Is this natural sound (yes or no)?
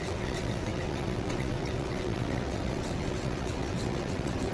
no